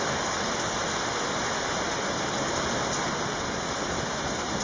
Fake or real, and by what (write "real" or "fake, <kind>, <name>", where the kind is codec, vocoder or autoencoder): real